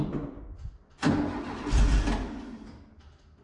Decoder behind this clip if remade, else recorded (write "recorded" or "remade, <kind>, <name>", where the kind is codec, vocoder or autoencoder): recorded